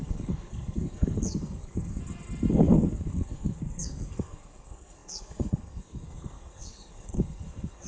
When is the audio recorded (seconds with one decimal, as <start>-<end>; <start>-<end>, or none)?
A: 2.0-2.5